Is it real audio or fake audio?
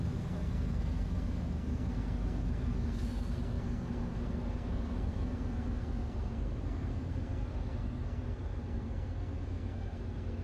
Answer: fake